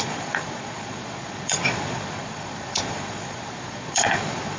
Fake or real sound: fake